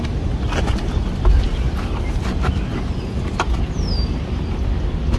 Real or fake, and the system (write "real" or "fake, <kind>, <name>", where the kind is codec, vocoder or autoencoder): real